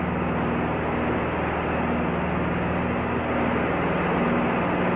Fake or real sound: real